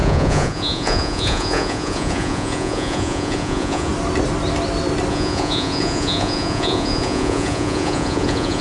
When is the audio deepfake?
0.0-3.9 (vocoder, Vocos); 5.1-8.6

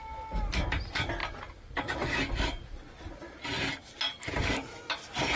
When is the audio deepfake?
none

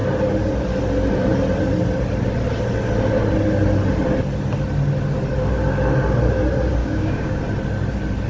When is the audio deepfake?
6.8-7.4 (codec, DAC)

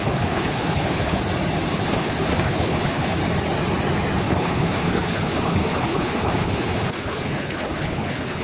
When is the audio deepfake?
0.0-1.2 (codec, HILCodec); 1.7-3.2; 4.2-8.4